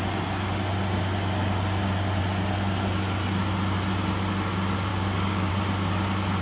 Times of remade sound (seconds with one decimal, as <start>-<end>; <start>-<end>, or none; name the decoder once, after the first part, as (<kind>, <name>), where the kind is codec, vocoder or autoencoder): 4.9-5.5 (codec, DAC)